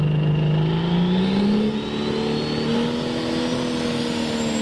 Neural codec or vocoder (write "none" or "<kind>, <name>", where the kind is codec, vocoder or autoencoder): none